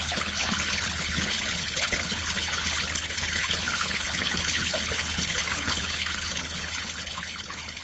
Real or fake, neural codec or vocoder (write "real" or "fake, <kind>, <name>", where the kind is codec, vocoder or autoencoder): fake, codec, HILCodec